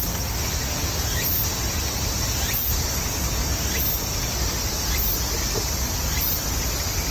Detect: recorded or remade recorded